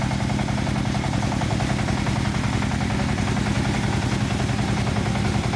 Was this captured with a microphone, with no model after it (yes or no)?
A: yes